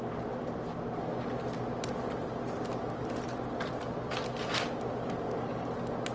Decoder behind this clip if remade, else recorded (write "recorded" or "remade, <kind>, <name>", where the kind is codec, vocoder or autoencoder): recorded